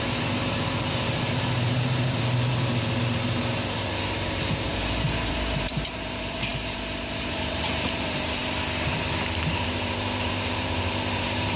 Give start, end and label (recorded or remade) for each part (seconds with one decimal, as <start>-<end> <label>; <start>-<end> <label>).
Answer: 0.0-8.4 remade; 8.4-9.5 recorded; 9.5-11.6 remade